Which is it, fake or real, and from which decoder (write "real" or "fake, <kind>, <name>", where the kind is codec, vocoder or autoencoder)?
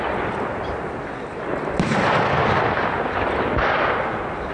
real